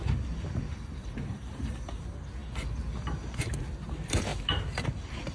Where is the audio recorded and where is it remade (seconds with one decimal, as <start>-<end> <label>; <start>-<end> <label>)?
0.0-0.7 recorded; 0.7-1.9 remade; 1.9-5.3 recorded